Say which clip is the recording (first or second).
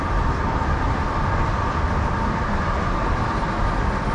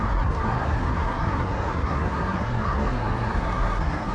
first